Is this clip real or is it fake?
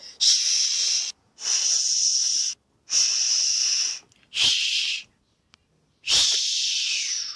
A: real